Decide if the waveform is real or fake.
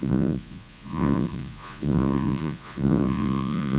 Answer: fake